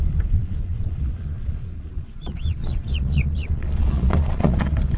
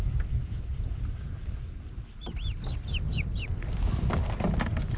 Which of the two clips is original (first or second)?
second